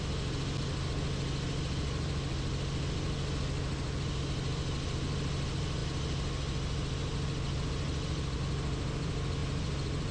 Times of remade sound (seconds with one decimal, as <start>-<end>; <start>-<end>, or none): none